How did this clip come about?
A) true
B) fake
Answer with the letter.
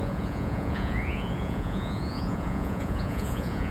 B